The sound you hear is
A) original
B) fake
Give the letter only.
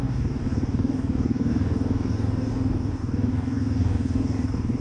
B